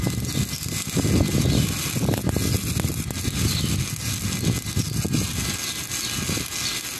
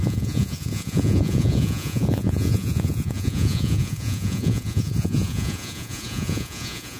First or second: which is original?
first